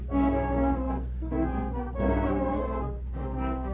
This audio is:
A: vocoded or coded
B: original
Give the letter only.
A